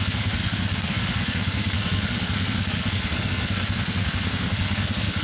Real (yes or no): no